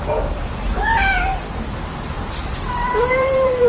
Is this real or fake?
fake